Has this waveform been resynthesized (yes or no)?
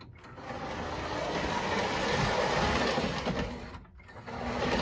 no